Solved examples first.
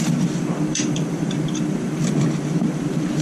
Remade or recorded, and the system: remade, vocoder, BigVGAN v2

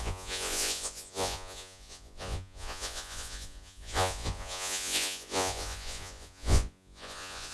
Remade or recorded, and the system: remade, vocoder, Vocos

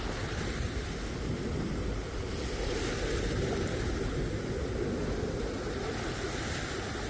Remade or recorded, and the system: recorded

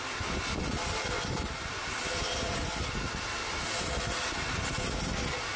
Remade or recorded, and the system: recorded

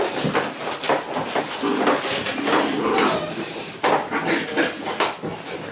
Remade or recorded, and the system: recorded